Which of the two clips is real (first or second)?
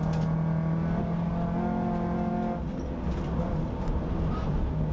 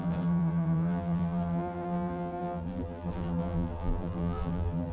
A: first